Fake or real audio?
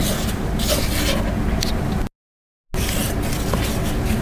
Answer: real